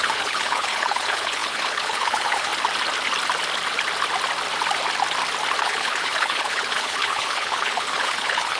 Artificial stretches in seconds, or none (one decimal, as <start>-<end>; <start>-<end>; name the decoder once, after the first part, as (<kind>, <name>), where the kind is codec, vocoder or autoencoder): 0.0-2.5 (codec, HILCodec); 5.6-8.6